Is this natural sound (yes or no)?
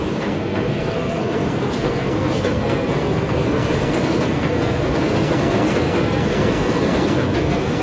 no